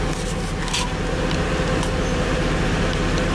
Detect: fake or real real